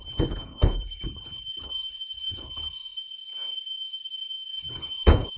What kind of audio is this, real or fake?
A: fake